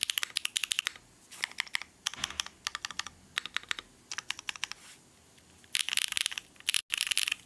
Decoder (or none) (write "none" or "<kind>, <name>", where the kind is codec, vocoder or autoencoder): none